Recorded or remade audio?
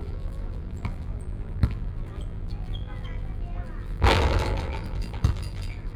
remade